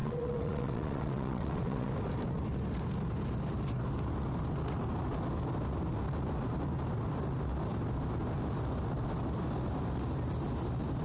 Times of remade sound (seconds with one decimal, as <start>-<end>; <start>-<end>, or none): 0.0-1.9